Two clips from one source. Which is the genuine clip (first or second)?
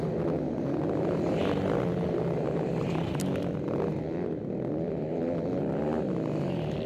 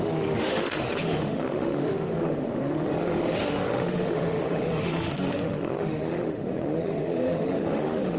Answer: first